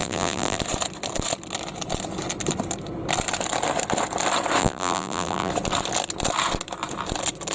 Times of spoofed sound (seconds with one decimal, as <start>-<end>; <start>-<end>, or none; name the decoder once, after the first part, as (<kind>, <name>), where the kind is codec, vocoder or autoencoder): 0.0-0.6 (vocoder, BigVGAN v2); 4.6-5.5